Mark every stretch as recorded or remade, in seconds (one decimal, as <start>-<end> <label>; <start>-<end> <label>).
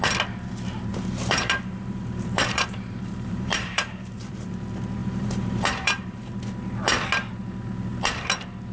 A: 0.0-0.9 recorded; 0.9-4.5 remade; 4.5-5.0 recorded; 5.0-6.3 remade; 6.3-8.7 recorded